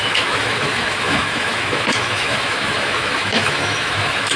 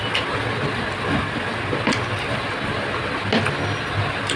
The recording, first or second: second